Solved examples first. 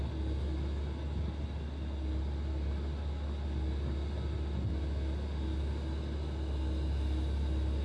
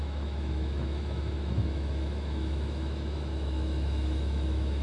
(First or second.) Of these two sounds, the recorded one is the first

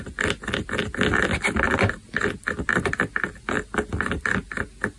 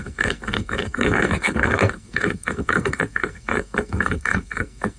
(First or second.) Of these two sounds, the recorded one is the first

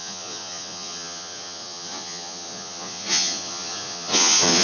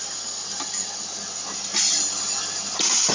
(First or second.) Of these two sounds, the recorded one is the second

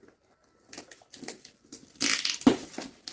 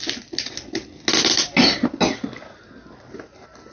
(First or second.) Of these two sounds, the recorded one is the second